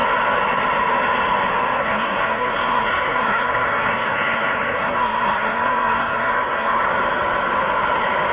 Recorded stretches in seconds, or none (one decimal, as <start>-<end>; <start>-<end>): 0.0-1.8; 6.8-8.3